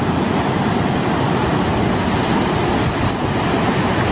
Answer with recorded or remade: recorded